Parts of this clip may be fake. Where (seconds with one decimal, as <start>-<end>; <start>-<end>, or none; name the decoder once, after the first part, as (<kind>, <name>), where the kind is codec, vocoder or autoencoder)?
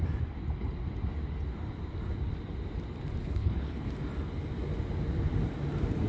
3.2-3.9 (codec, HILCodec)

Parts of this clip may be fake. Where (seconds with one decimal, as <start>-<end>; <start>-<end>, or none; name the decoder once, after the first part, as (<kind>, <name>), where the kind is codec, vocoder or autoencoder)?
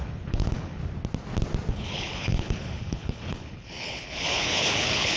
0.0-0.8 (codec, HILCodec); 1.7-5.2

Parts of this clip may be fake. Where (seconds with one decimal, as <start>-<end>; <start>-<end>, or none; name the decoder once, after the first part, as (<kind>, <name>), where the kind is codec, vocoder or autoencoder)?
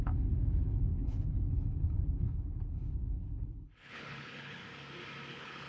0.0-4.6 (codec, HILCodec); 5.3-5.7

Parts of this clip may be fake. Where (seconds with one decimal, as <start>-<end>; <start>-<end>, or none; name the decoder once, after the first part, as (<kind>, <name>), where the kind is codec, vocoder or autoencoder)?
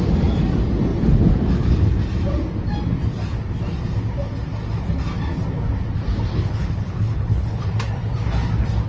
6.3-7.7 (codec, HILCodec)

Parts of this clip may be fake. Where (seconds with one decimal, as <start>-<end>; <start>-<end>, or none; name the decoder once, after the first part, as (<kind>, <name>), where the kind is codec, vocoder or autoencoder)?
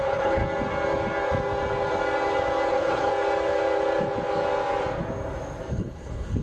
0.0-0.4 (codec, HILCodec); 2.7-3.1; 5.7-6.4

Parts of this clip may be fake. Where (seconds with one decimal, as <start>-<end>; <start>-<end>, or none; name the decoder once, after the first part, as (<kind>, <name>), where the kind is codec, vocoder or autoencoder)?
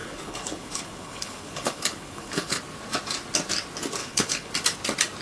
0.0-2.6 (codec, HILCodec); 4.0-4.5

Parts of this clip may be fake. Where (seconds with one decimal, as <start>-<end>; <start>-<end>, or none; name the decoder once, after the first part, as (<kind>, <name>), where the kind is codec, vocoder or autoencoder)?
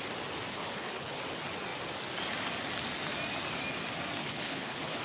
0.5-1.2 (codec, HILCodec); 4.2-5.0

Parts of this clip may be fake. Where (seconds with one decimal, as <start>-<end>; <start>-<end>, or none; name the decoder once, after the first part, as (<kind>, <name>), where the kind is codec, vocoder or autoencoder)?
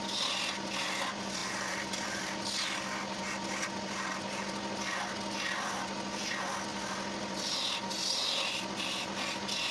none